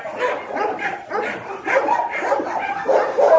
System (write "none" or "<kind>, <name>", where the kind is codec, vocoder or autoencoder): none